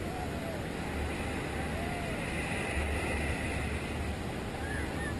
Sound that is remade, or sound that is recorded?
recorded